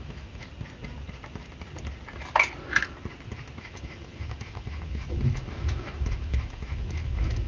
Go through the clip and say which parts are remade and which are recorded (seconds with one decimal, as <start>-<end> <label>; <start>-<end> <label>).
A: 0.0-0.5 remade; 0.5-3.6 recorded; 3.6-7.5 remade